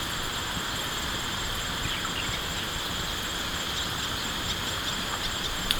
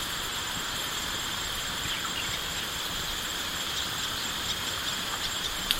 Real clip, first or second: first